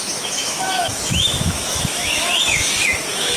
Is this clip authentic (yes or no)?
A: no